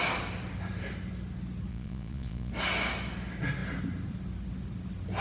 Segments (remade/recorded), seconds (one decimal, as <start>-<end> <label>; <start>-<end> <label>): 0.0-1.7 recorded; 1.7-2.5 remade; 2.5-5.2 recorded